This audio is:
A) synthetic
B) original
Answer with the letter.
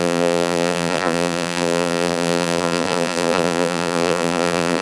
A